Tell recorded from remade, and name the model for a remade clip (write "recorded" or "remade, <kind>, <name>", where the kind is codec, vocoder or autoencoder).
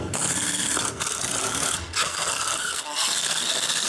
remade, codec, SNAC